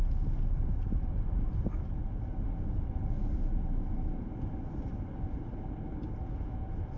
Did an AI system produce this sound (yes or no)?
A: no